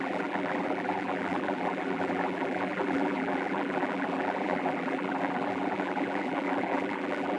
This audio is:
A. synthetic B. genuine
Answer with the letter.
A